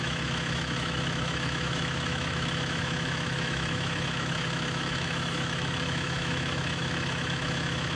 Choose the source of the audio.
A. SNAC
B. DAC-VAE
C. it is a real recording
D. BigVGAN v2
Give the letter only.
B